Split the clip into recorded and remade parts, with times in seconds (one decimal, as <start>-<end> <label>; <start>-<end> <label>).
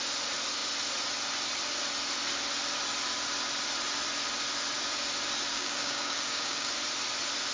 0.0-5.5 recorded; 5.5-6.7 remade; 6.7-7.5 recorded